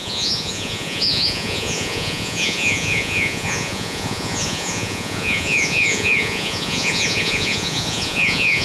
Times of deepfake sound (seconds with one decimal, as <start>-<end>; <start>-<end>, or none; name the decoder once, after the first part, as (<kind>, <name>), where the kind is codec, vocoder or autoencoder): 0.0-8.6 (vocoder, Vocos)

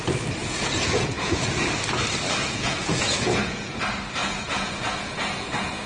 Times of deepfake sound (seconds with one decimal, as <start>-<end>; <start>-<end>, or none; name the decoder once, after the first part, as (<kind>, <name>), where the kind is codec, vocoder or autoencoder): 0.4-1.5 (vocoder, Vocos); 2.4-3.8; 4.2-5.9